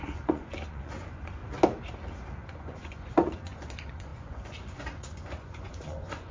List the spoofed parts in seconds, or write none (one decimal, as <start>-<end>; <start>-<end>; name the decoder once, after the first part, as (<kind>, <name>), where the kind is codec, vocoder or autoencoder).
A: 0.0-1.4 (vocoder, Vocos); 2.4-6.3